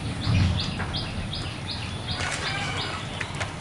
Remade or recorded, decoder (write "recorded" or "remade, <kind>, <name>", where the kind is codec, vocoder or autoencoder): recorded